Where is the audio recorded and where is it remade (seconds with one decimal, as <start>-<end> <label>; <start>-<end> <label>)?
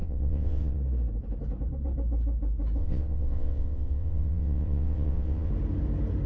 0.0-0.8 remade; 0.8-2.8 recorded; 2.8-5.5 remade; 5.5-6.3 recorded